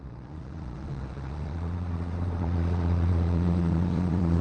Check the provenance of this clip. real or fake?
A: fake